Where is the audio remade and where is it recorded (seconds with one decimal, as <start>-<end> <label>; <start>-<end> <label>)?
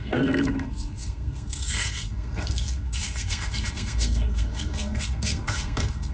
0.0-6.1 remade